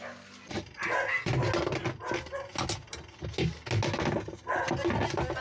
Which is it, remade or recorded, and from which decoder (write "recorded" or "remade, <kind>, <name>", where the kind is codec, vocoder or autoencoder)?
recorded